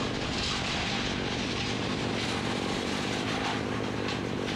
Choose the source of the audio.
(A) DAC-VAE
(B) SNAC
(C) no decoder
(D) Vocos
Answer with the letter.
C